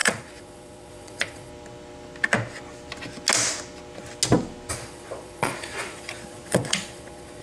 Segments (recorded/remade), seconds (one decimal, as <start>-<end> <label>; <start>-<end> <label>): 0.0-1.5 remade; 1.5-4.7 recorded; 4.7-7.4 remade